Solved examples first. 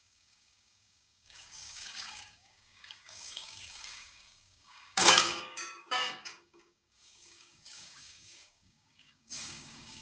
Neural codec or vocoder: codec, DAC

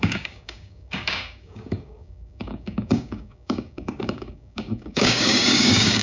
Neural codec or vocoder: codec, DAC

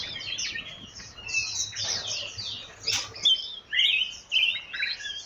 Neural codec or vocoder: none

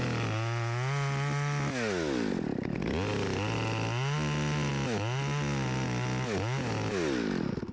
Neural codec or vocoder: none